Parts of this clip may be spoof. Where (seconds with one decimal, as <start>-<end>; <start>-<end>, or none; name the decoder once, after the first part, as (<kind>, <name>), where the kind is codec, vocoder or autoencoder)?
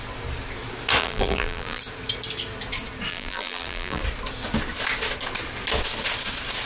1.0-1.8 (vocoder, BigVGAN v2); 3.1-4.0